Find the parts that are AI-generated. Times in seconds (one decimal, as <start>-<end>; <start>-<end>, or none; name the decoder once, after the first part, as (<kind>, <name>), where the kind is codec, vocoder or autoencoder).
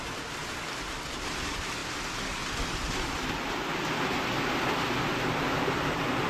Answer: none